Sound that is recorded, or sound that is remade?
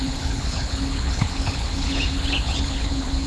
remade